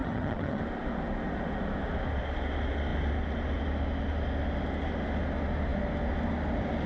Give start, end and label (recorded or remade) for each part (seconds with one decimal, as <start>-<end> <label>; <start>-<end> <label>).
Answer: 0.0-0.6 remade; 0.6-6.9 recorded